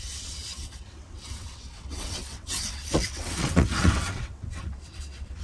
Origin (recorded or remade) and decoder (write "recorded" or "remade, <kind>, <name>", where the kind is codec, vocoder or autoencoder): remade, vocoder, WaveNeXt